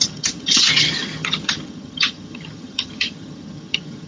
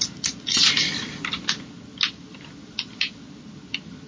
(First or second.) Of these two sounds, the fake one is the first